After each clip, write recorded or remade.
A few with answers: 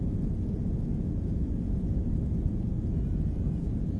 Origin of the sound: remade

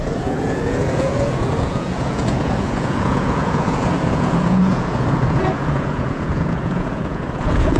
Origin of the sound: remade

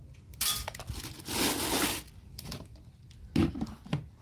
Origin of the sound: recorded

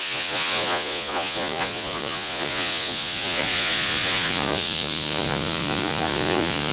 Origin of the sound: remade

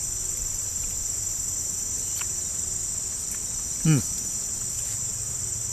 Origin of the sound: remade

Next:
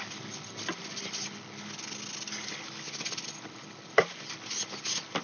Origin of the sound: recorded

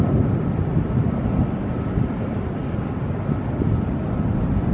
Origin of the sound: recorded